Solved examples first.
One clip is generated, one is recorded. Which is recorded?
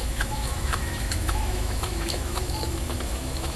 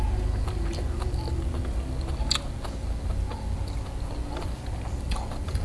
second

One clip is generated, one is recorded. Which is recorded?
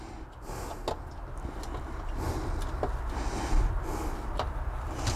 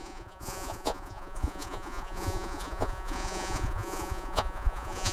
first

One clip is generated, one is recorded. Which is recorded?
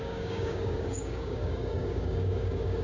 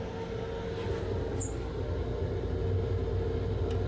second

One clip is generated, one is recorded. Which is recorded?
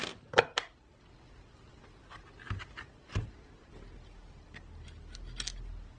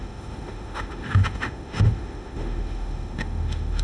first